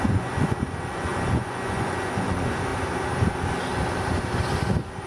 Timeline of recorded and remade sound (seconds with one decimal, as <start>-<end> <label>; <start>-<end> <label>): 0.0-2.7 remade; 2.7-5.1 recorded